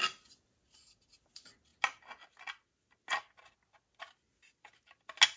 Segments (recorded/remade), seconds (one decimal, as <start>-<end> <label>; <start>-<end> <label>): 0.0-5.4 recorded